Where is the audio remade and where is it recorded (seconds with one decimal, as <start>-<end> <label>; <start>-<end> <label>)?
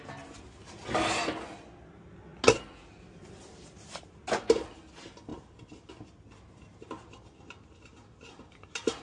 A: 0.0-9.0 recorded